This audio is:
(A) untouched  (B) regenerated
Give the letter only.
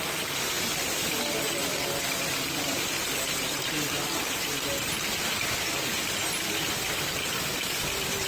A